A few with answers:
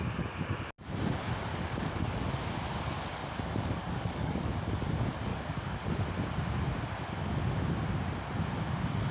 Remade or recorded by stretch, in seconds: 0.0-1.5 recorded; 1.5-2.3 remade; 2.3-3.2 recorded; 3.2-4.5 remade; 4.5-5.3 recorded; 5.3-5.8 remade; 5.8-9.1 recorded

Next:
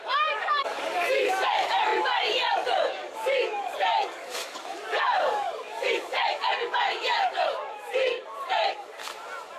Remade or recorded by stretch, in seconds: 0.0-9.0 remade; 9.0-9.6 recorded